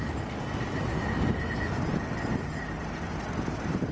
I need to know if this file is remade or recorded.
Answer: recorded